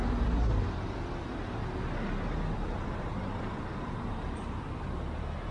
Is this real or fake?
real